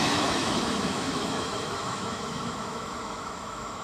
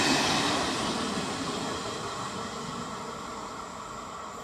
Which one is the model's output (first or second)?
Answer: first